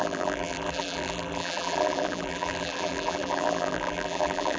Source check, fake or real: fake